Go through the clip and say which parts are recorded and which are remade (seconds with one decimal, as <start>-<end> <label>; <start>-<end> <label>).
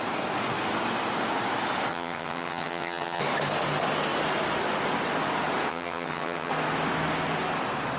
0.0-1.9 recorded; 1.9-3.2 remade; 3.2-5.7 recorded; 5.7-6.5 remade; 6.5-8.0 recorded